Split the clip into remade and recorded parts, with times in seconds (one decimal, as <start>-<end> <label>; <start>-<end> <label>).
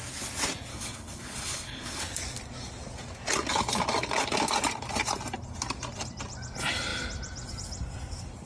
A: 0.0-0.7 recorded; 0.7-2.0 remade; 2.0-8.5 recorded